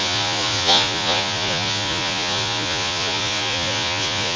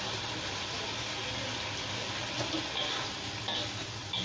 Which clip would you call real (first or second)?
second